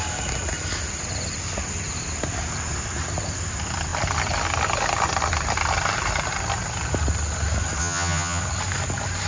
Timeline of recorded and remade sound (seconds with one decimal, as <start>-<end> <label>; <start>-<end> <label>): 0.0-7.8 recorded; 7.8-8.4 remade; 8.4-9.3 recorded